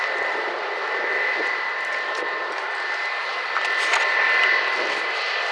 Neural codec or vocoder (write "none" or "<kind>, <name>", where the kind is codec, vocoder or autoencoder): none